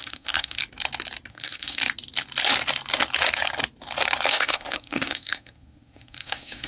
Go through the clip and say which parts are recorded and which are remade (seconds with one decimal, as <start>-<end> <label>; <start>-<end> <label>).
0.0-0.6 remade; 0.6-1.3 recorded; 1.3-1.8 remade; 1.8-4.3 recorded; 4.3-6.7 remade